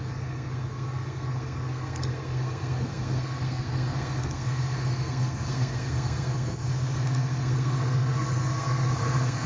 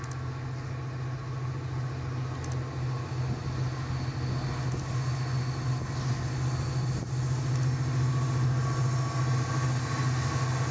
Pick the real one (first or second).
second